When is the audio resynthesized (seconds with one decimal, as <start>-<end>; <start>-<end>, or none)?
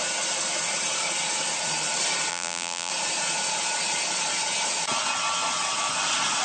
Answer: 2.3-2.9